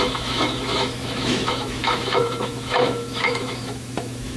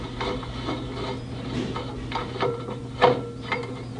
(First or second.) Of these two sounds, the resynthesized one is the first